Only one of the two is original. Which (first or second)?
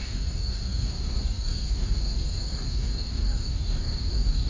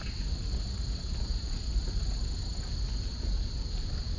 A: second